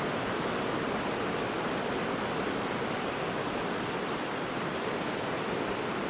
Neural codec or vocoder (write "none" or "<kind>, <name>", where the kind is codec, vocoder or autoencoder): none